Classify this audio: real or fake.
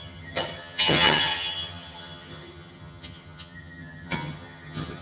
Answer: fake